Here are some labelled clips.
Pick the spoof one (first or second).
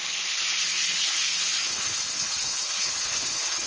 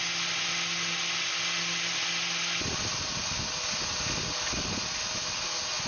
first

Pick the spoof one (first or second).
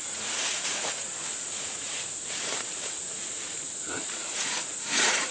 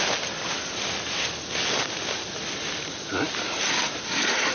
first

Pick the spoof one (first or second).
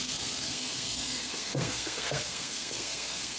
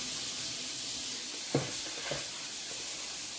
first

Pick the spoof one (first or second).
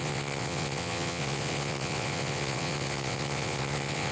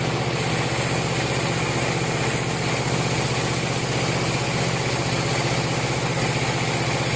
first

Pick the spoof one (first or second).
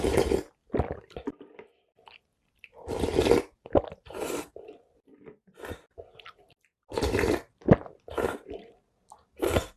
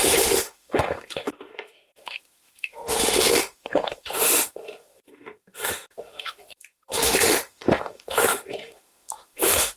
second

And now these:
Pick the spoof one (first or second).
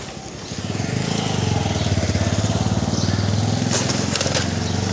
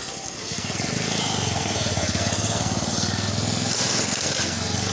second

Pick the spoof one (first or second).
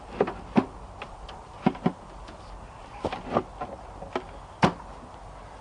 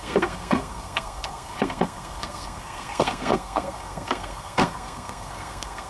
second